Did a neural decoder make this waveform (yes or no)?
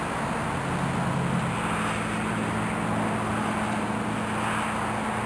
no